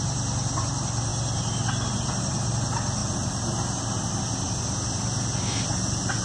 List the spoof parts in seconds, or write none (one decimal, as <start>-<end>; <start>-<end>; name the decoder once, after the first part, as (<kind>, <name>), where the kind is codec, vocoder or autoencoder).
none